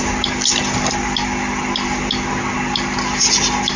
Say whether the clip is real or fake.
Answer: real